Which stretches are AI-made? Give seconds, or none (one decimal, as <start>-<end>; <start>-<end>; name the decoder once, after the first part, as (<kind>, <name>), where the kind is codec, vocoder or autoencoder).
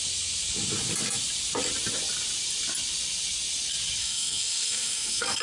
4.0-5.4 (codec, SNAC)